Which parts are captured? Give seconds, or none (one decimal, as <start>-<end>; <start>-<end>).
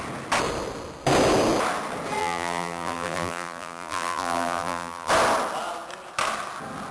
0.0-2.2; 5.1-6.9